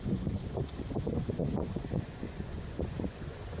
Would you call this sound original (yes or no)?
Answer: no